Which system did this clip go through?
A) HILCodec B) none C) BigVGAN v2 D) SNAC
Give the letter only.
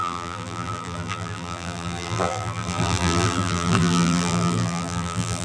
C